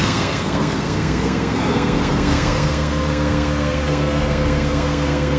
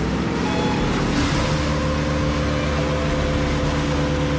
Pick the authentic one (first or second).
second